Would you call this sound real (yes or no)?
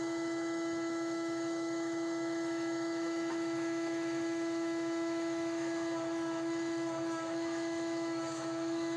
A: no